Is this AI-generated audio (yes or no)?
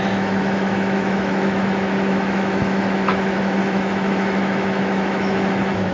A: yes